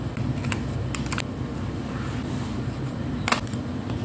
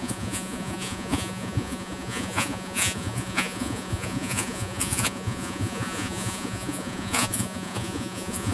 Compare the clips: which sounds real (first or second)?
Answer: first